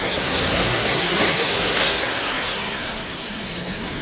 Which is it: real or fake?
fake